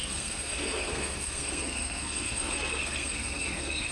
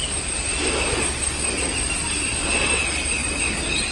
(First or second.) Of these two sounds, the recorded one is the second